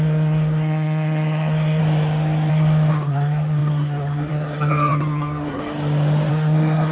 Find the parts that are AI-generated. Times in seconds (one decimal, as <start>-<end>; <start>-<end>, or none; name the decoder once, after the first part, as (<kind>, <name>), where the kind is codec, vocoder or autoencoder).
0.0-1.8 (codec, SNAC); 2.5-5.6; 6.3-6.9